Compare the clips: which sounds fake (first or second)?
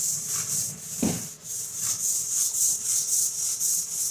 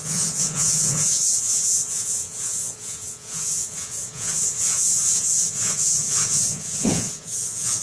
second